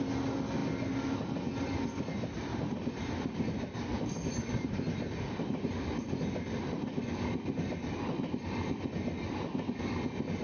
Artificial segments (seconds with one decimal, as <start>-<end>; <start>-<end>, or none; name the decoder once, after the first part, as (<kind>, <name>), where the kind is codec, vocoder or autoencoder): none